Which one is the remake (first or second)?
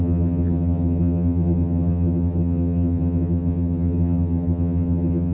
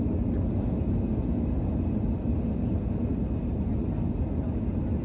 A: first